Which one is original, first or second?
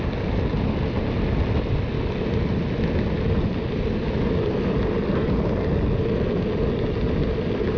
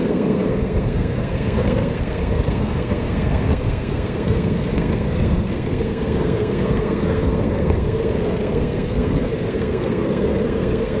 first